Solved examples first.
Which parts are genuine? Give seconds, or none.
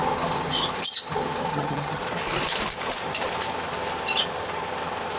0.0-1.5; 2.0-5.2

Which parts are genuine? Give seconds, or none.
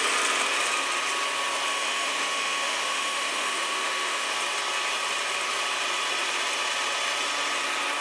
0.0-1.7; 4.3-8.0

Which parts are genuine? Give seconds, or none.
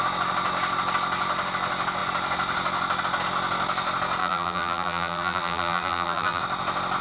0.0-4.2; 6.4-7.0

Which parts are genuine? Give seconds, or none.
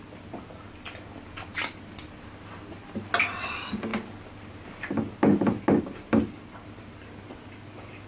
0.0-8.1